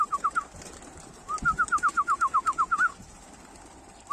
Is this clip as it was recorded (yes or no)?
yes